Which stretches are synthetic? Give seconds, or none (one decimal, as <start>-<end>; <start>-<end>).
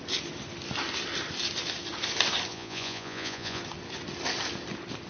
2.5-3.6